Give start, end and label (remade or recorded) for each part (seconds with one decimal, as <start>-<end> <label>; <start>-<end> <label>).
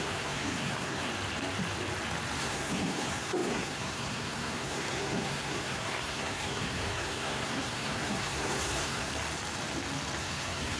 0.0-1.1 remade; 1.1-2.4 recorded; 2.4-9.1 remade; 9.1-10.2 recorded; 10.2-10.8 remade